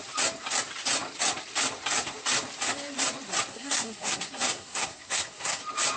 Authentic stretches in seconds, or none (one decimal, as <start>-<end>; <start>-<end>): 0.0-3.5; 5.6-6.0

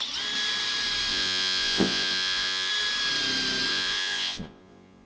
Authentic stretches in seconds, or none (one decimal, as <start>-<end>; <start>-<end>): 0.0-1.1; 2.7-3.7